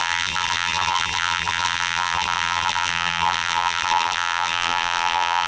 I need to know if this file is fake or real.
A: fake